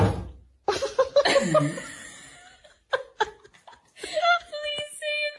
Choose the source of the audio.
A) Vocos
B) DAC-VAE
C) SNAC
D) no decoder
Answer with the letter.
D